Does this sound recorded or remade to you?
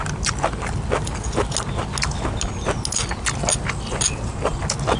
recorded